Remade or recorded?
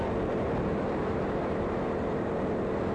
remade